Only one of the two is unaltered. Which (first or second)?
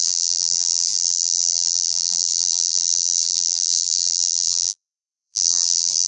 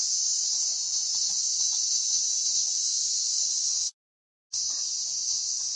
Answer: second